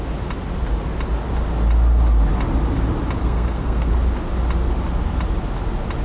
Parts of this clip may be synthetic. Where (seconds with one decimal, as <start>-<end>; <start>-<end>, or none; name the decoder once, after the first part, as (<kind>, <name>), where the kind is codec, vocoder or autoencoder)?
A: 3.2-3.9 (codec, SNAC)